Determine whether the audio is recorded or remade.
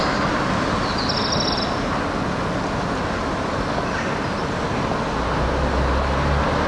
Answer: recorded